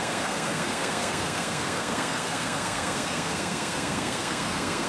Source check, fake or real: fake